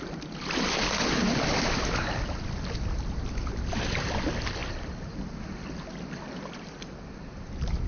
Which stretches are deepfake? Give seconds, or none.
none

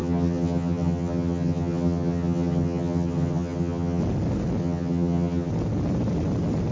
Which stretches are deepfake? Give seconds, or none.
0.0-4.0 (vocoder, HiFi-GAN); 4.6-5.5

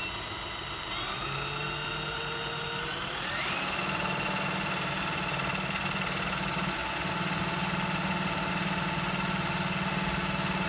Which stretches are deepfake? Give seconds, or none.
none

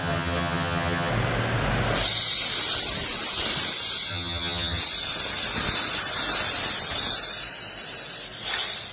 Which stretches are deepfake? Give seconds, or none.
0.0-1.1 (vocoder, HiFi-GAN); 4.1-4.8

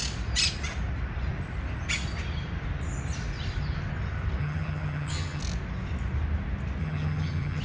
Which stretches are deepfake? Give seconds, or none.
4.4-5.4 (vocoder, HiFi-GAN); 6.8-7.6

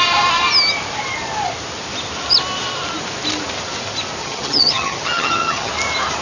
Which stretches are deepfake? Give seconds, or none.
4.2-5.7 (vocoder, HiFi-GAN)